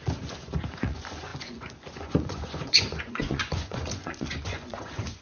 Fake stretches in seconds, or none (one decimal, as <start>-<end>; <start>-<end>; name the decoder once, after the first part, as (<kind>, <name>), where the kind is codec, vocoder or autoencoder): 0.0-5.2 (vocoder, Vocos)